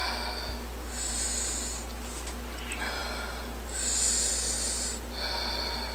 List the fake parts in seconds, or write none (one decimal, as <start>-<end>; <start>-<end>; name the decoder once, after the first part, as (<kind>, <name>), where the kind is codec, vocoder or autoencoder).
none